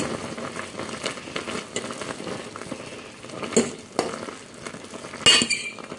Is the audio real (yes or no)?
yes